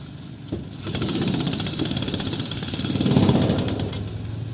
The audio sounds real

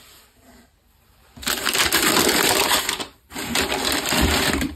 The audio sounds fake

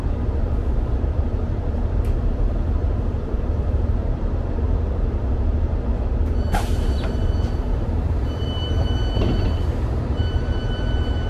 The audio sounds fake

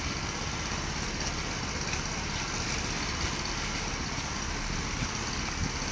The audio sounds real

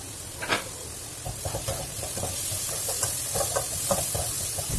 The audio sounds real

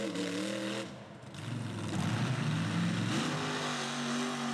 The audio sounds real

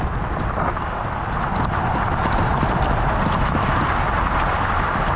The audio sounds real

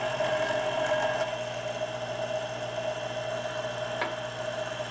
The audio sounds real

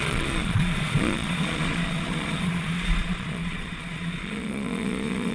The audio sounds fake